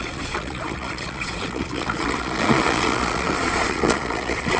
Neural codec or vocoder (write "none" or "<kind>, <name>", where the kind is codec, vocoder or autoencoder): vocoder, Vocos